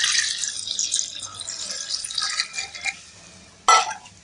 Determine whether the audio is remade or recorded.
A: recorded